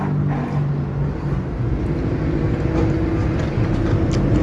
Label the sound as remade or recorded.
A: recorded